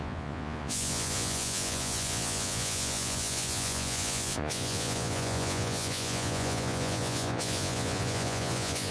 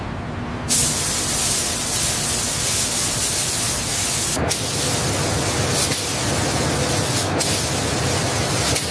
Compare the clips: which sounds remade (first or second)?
first